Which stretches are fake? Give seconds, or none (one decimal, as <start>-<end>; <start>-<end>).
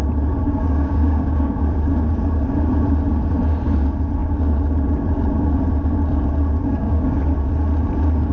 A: 0.4-1.6; 6.6-7.2